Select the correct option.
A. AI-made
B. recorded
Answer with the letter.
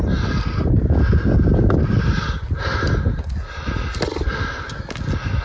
B